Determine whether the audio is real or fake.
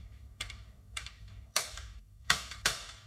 fake